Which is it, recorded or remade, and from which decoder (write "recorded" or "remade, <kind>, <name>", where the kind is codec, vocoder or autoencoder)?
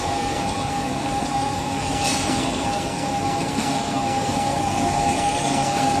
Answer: remade, codec, SNAC